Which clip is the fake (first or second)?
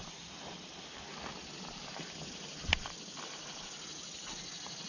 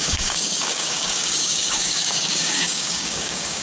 second